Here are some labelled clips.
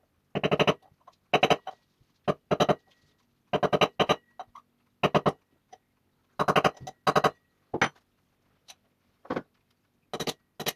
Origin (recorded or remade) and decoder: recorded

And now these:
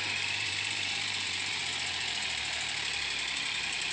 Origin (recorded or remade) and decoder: remade, vocoder, BigVGAN v2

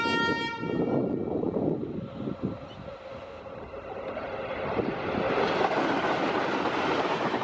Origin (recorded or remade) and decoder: recorded